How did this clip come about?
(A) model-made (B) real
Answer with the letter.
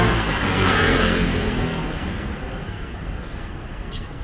A